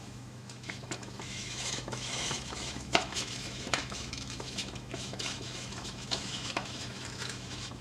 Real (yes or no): no